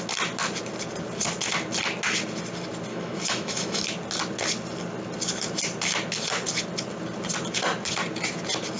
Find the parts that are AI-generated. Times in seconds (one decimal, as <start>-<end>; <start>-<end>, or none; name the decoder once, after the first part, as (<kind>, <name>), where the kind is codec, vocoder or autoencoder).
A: 2.9-3.8 (autoencoder, DAC-VAE)